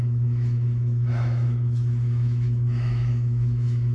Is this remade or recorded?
remade